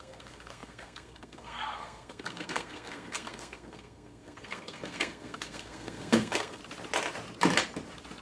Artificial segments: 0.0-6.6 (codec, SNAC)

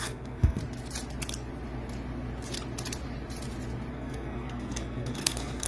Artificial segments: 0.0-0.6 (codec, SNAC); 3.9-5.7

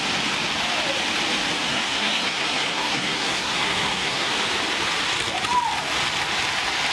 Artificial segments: 1.6-4.3 (codec, SNAC)

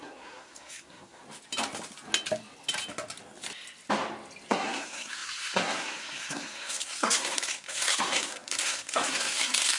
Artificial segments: 0.0-1.2 (codec, SNAC); 4.5-9.8

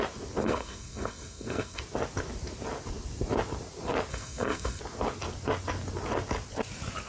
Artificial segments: 0.4-1.8 (codec, SNAC); 4.1-4.8